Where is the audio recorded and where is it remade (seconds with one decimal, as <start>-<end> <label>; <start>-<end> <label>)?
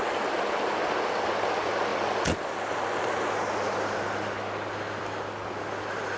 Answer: 0.0-6.2 recorded